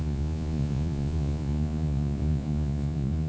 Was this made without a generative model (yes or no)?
no